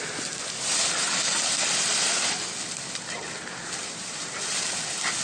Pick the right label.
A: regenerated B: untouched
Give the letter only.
B